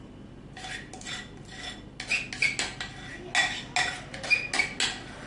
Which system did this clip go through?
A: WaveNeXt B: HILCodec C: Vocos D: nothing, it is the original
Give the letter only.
D